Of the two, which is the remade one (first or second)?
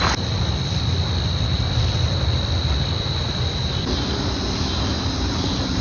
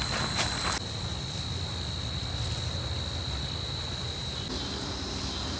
first